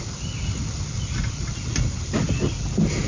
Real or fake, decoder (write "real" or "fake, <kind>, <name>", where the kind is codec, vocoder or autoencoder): real